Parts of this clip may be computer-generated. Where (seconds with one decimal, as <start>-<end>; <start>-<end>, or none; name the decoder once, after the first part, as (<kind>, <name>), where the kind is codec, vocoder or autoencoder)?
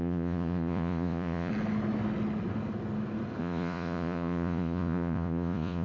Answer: 0.0-1.5 (vocoder, Vocos); 3.4-5.8